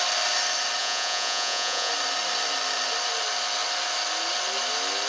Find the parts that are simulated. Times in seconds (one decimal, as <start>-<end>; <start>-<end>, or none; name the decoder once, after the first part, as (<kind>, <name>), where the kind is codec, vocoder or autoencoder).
0.8-1.9 (vocoder, Vocos)